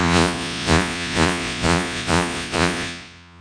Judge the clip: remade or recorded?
remade